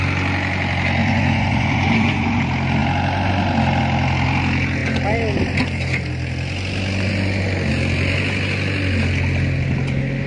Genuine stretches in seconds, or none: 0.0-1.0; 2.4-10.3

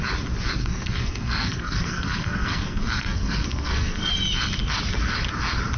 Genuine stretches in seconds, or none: 0.0-0.6; 4.1-5.8

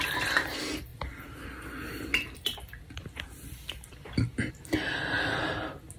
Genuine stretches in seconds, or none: 0.0-6.0

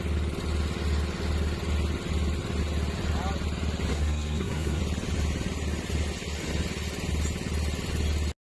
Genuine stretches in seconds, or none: 0.0-3.9; 4.8-8.5

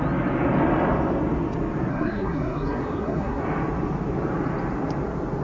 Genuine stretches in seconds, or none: 0.0-1.9; 3.4-5.4

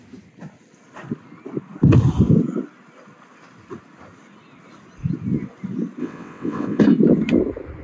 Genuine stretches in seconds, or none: 0.0-6.0; 6.8-7.8

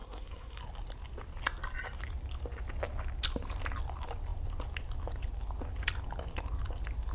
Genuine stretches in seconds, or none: 0.6-7.1

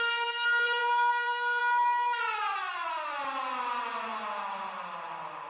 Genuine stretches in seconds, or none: 0.0-0.8; 1.6-5.5